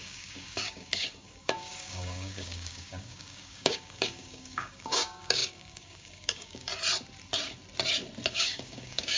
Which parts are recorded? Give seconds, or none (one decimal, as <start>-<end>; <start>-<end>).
6.7-8.3